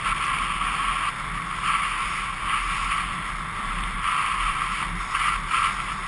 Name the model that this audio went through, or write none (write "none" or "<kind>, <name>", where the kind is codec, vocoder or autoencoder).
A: none